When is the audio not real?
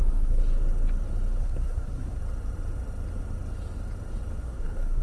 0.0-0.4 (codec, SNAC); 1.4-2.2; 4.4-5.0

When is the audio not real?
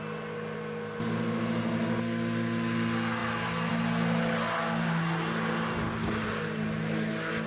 none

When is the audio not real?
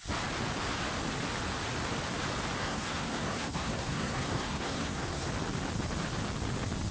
2.6-5.3 (codec, SNAC)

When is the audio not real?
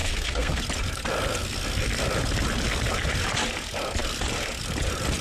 0.0-0.6 (codec, SNAC)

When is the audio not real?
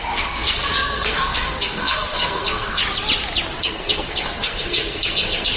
0.0-2.8 (codec, SNAC); 3.6-5.6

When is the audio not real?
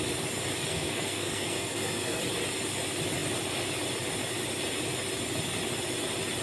0.7-2.2 (codec, SNAC)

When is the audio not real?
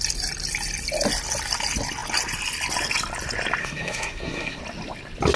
3.6-4.6 (codec, SNAC)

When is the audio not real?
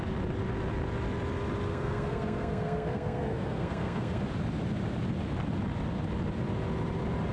1.7-4.2 (codec, SNAC)